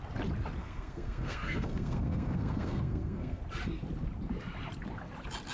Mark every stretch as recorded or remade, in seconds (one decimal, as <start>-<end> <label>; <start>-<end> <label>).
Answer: 0.0-0.6 recorded; 0.6-3.4 remade; 3.4-5.5 recorded